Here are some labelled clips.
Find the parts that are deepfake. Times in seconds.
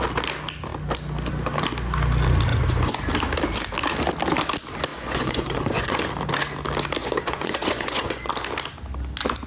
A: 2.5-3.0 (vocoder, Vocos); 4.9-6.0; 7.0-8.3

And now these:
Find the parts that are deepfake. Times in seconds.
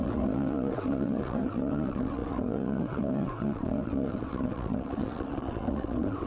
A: 0.0-6.3 (vocoder, WaveNeXt)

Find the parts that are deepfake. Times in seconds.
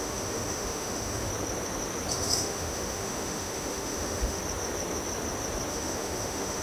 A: 0.0-1.3 (autoencoder, DAC-VAE); 2.1-4.4; 5.7-6.6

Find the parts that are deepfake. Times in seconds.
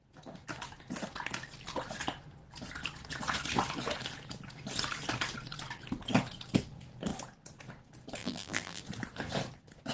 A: 8.2-8.8 (vocoder, BigVGAN v2)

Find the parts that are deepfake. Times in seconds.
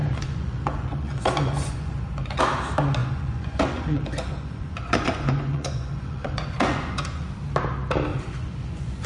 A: 0.0-2.4 (vocoder, Vocos); 3.0-7.3; 8.1-9.1